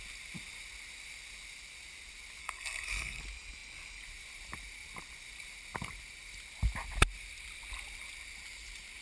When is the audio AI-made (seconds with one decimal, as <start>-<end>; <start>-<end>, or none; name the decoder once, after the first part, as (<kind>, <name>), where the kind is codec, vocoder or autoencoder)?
2.4-3.2 (codec, SNAC)